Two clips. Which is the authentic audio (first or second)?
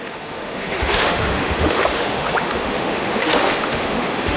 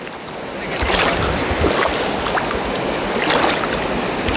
second